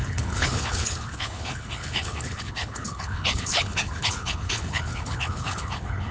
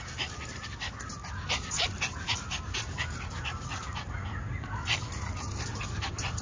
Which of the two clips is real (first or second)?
second